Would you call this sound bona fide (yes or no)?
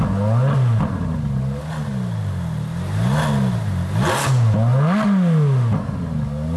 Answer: yes